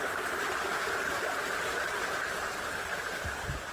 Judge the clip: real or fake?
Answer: real